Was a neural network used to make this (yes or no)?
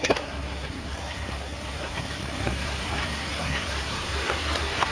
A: yes